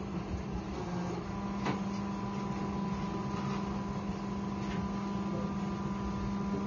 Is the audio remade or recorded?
recorded